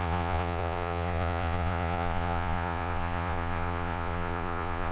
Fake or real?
fake